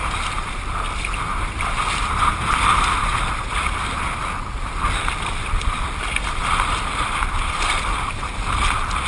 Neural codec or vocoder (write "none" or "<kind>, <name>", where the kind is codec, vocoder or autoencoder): none